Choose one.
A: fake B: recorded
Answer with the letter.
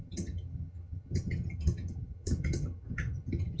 A